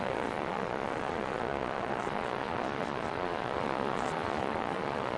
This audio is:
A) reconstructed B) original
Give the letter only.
A